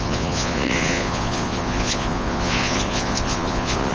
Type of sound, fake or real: fake